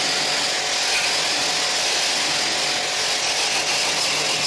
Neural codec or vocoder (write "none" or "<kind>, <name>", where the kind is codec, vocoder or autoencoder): none